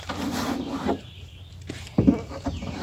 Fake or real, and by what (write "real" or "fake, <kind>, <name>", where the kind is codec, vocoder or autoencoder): real